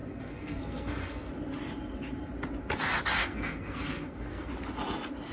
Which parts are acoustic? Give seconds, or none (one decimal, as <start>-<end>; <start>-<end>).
1.3-3.2; 4.5-5.3